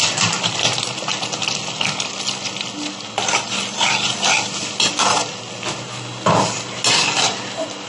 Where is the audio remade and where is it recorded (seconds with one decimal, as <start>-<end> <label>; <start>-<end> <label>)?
0.0-7.9 recorded